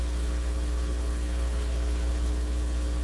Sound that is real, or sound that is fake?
fake